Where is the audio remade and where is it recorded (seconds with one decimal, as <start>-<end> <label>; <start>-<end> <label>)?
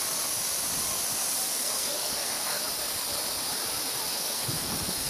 0.0-1.5 recorded; 1.5-2.6 remade; 2.6-4.1 recorded; 4.1-5.1 remade